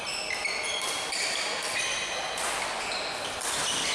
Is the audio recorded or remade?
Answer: remade